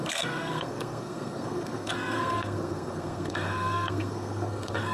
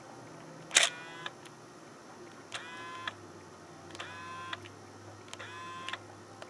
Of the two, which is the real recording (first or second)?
second